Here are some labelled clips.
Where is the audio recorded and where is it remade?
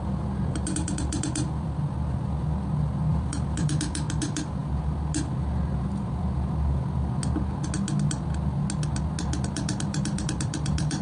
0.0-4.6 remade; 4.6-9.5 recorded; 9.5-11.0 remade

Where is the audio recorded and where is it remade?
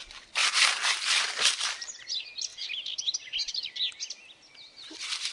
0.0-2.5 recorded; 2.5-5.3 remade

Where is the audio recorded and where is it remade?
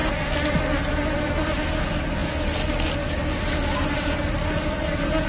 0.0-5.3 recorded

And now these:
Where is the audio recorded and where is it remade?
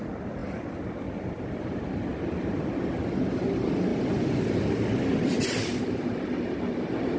0.0-3.9 recorded; 3.9-5.8 remade; 5.8-7.2 recorded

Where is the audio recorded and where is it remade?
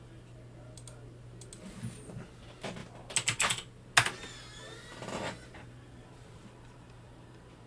0.0-4.9 recorded; 4.9-7.7 remade